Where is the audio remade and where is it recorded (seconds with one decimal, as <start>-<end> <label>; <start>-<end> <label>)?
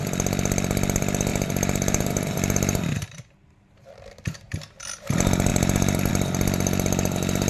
0.0-1.3 recorded; 1.3-4.0 remade; 4.0-5.5 recorded; 5.5-6.1 remade; 6.1-7.5 recorded